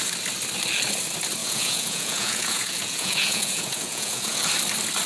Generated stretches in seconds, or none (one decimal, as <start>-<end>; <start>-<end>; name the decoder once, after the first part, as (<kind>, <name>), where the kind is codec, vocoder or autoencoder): 1.4-4.5 (vocoder, Vocos)